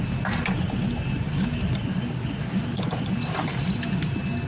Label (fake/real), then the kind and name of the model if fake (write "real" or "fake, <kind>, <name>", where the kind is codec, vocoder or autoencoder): real